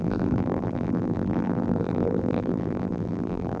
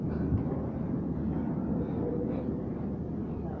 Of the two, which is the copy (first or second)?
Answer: first